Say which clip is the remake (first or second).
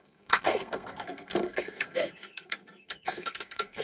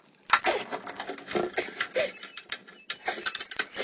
first